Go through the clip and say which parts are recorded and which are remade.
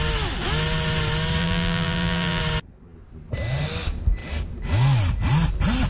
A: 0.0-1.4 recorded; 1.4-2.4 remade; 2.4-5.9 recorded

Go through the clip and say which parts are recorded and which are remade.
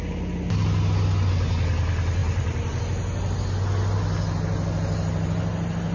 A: 0.0-2.2 recorded; 2.2-2.8 remade; 2.8-5.9 recorded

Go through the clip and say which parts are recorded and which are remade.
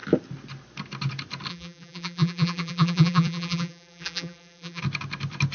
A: 0.0-1.5 recorded; 1.5-4.8 remade; 4.8-5.5 recorded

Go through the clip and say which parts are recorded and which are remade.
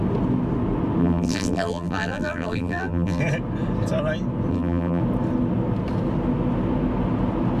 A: 0.0-1.0 recorded; 1.0-3.2 remade; 3.2-4.5 recorded; 4.5-5.0 remade; 5.0-7.6 recorded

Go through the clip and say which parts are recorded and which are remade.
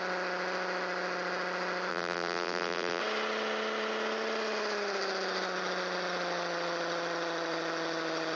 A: 0.0-1.9 recorded; 1.9-3.0 remade; 3.0-8.4 recorded